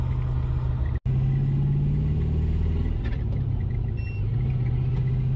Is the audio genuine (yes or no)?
yes